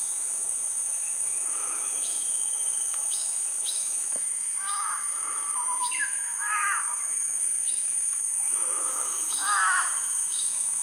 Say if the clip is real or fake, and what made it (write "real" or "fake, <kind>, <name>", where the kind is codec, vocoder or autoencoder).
fake, autoencoder, DAC-VAE